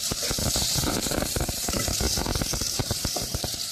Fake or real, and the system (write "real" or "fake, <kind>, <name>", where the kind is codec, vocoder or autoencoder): fake, vocoder, BigVGAN v2